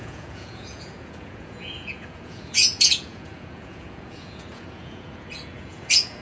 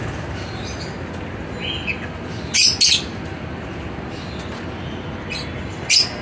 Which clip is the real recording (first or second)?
second